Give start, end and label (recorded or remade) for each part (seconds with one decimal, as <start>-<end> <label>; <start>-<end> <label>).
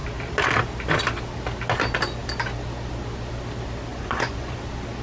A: 0.0-3.9 recorded; 3.9-4.6 remade; 4.6-5.0 recorded